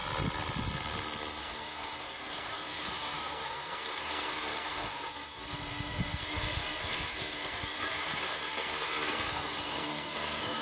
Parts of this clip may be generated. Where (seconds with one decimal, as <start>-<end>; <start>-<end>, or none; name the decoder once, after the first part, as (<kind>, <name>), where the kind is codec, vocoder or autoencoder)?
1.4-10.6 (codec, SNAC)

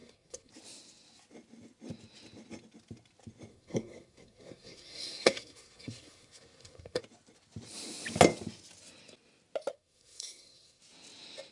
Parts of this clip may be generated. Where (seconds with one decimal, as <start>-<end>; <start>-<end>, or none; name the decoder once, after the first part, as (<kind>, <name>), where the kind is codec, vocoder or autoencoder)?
0.0-0.5 (codec, SNAC); 3.5-7.0; 9.7-10.8

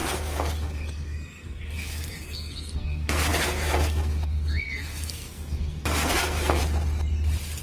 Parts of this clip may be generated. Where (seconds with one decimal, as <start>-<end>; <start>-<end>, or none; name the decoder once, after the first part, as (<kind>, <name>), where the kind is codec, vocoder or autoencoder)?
0.0-6.6 (codec, SNAC)

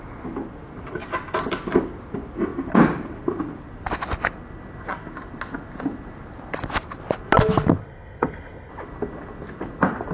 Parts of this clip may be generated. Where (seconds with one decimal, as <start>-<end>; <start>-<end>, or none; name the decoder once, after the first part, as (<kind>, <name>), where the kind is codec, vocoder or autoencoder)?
7.8-8.7 (codec, SNAC)